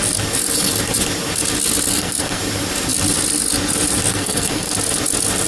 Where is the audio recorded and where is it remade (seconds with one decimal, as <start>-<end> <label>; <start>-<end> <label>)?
0.0-1.9 recorded; 1.9-2.4 remade; 2.4-4.1 recorded; 4.1-4.7 remade; 4.7-5.5 recorded